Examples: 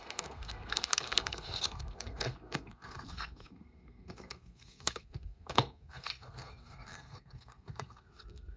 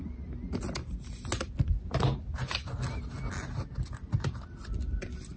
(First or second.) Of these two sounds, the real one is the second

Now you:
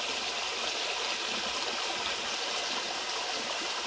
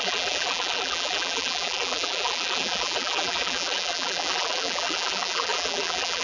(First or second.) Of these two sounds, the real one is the first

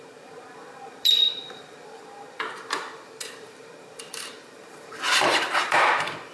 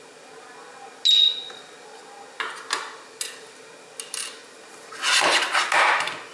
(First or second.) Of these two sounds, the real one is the second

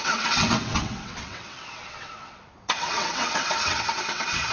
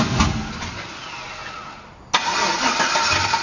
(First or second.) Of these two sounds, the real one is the second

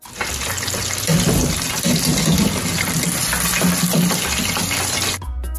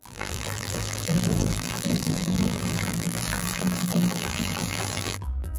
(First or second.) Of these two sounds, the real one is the first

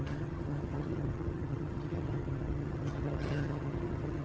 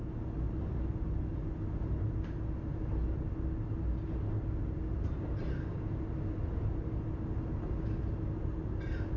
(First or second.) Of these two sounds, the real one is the second